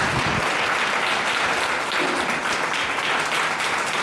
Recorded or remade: recorded